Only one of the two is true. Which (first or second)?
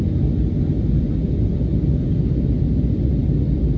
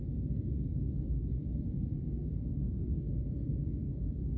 first